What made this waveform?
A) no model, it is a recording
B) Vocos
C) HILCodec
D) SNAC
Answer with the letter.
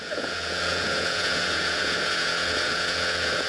B